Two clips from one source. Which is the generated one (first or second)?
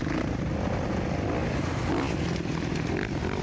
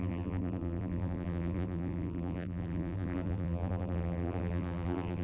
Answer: second